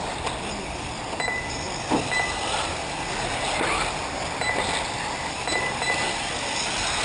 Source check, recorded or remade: recorded